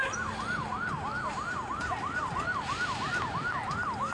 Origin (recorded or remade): recorded